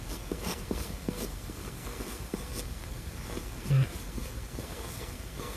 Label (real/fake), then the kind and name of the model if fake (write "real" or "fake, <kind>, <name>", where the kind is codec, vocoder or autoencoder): fake, codec, SNAC